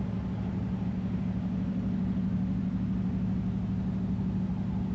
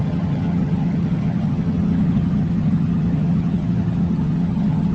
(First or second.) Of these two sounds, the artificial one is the second